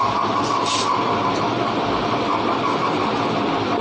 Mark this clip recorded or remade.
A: recorded